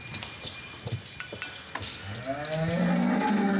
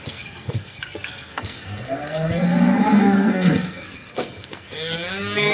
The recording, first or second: first